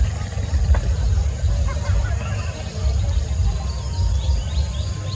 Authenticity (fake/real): real